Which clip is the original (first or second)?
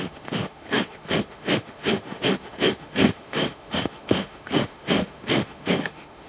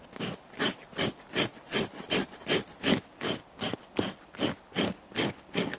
second